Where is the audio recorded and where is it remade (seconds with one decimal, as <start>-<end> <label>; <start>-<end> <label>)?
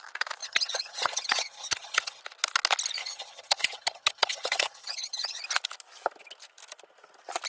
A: 0.0-0.4 recorded; 0.4-2.2 remade; 2.2-3.0 recorded; 3.0-5.4 remade; 5.4-7.5 recorded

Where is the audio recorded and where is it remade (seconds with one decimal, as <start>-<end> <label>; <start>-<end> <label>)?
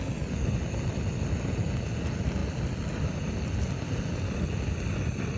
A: 0.0-5.4 recorded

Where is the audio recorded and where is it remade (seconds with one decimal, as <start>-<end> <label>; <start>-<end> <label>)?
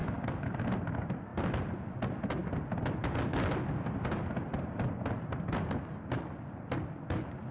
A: 0.0-0.5 remade; 0.5-7.5 recorded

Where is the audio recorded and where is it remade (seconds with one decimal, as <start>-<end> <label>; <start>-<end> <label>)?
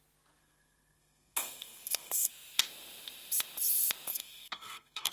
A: 0.0-0.4 recorded; 0.4-2.3 remade; 2.3-4.1 recorded; 4.1-5.1 remade